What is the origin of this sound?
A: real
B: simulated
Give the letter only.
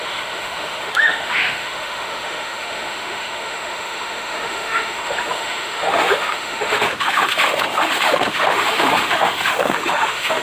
B